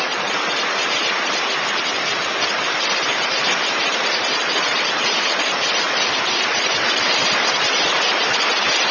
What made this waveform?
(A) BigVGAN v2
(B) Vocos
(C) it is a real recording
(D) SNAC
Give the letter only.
A